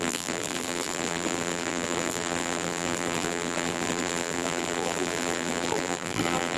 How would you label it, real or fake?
fake